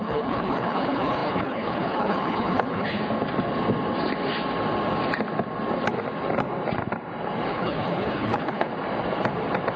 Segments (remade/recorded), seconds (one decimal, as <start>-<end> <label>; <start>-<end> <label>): 0.0-3.0 remade; 3.0-7.5 recorded; 7.5-8.7 remade; 8.7-9.8 recorded